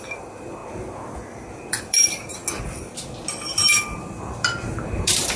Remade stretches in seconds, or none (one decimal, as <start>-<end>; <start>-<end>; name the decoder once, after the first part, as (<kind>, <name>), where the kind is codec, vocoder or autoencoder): 0.0-0.6 (vocoder, BigVGAN v2); 1.7-2.4; 4.0-5.4